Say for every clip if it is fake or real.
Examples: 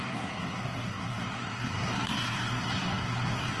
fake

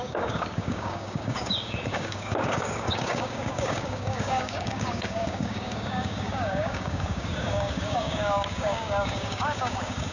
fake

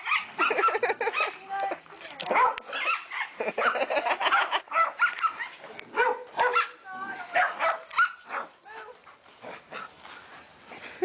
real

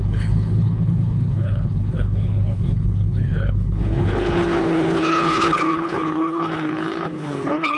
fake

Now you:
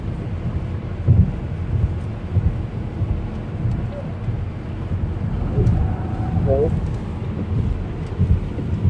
real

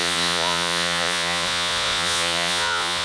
fake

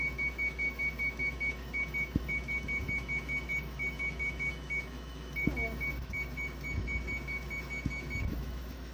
fake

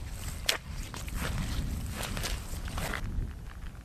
real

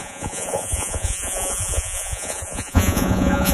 fake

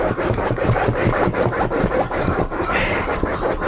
real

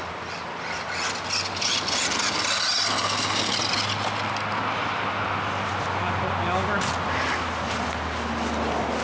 real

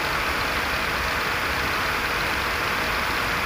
real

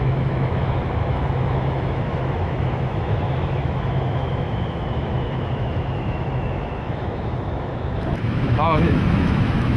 fake